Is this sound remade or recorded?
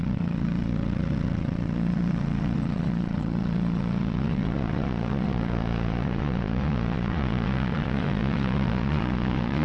remade